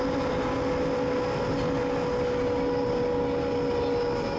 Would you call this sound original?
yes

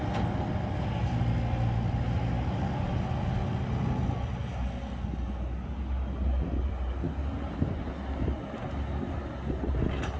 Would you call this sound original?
yes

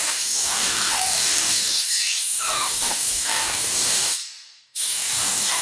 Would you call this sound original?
no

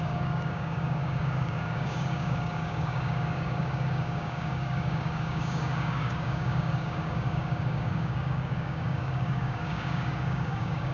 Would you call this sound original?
no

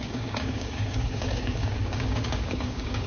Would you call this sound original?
no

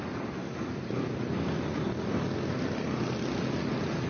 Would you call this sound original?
yes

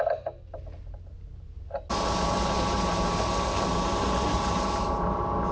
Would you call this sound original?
yes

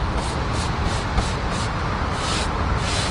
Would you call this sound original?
yes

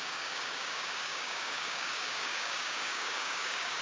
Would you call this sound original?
no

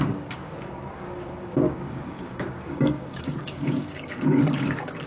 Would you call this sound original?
no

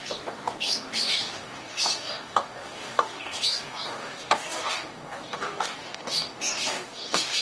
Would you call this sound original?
no